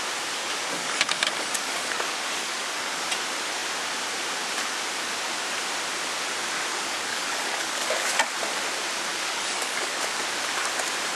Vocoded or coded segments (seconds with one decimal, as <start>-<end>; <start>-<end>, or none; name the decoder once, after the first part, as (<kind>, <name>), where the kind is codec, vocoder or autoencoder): 0.4-3.0 (codec, DAC); 6.7-8.1; 9.1-10.2